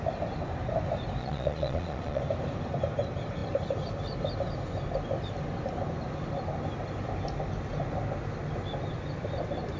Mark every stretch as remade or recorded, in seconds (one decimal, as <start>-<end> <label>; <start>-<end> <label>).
0.0-1.2 recorded; 1.2-2.2 remade; 2.2-9.8 recorded